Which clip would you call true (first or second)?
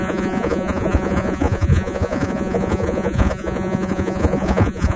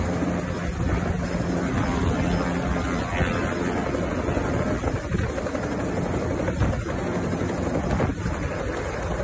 second